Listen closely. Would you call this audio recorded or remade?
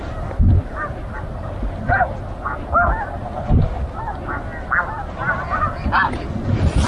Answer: recorded